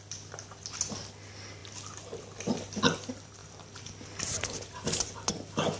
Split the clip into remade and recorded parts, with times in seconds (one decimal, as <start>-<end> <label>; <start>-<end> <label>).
0.0-5.8 recorded